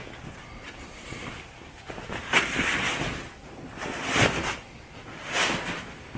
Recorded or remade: recorded